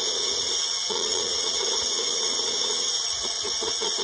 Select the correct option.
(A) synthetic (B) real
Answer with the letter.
A